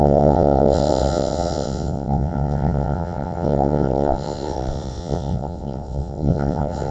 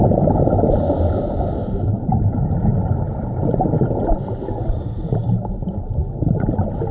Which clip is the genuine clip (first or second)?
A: second